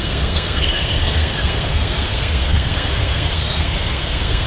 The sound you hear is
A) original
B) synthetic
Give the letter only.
B